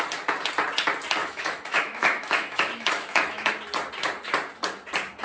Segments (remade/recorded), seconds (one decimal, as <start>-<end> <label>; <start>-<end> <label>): 0.0-1.2 recorded; 1.2-3.5 remade; 3.5-5.2 recorded